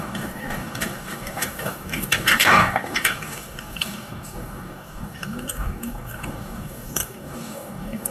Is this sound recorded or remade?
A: remade